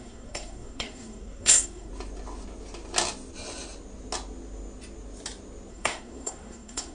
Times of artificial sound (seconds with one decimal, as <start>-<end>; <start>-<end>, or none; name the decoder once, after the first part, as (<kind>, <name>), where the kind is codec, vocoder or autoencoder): 0.0-1.9 (codec, SNAC); 5.7-6.9